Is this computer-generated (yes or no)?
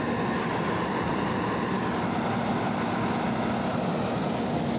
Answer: no